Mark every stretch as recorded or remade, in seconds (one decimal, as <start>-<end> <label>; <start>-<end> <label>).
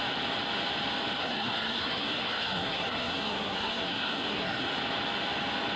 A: 0.0-1.2 recorded; 1.2-4.7 remade; 4.7-5.8 recorded